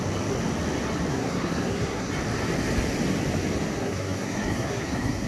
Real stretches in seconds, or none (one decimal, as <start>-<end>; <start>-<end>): 0.0-1.1; 2.1-3.8